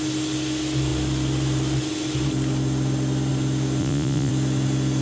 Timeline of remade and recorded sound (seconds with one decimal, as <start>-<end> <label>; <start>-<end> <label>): 0.0-3.8 recorded; 3.8-4.3 remade; 4.3-5.0 recorded